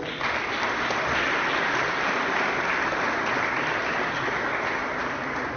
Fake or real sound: real